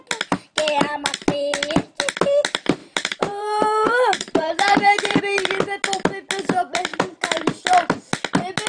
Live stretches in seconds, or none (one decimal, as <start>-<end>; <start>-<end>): 0.0-2.8; 5.2-6.9; 7.6-8.7